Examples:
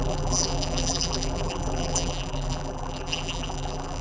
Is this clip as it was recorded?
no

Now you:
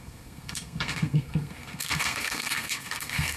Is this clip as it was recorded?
no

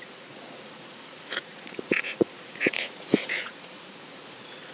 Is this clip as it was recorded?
no